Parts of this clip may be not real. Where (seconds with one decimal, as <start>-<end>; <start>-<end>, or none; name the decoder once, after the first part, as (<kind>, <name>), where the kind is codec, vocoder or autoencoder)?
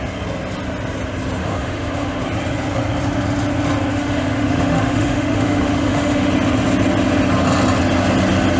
1.4-2.2 (autoencoder, DAC-VAE); 3.9-6.3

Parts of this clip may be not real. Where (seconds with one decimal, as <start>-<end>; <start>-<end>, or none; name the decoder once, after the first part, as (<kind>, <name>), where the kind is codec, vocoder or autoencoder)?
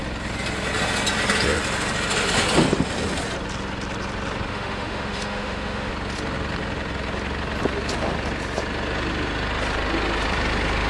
4.5-5.9 (autoencoder, DAC-VAE)